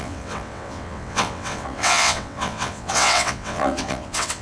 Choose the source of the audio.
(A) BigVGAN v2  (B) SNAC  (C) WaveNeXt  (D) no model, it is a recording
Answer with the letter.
C